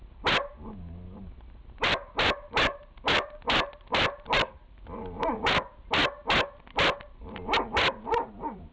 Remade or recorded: recorded